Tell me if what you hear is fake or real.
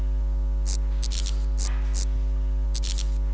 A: real